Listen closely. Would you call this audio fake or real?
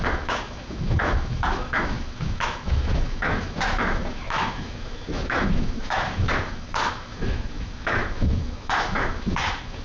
fake